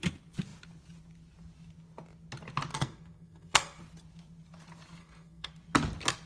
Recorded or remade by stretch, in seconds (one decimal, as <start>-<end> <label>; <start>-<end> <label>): 0.0-2.7 recorded; 2.7-3.8 remade; 3.8-5.0 recorded; 5.0-5.5 remade; 5.5-6.3 recorded